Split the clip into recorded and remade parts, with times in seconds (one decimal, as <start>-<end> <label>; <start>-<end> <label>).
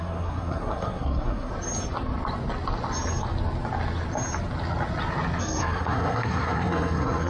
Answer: 0.0-1.5 remade; 1.5-5.4 recorded; 5.4-7.3 remade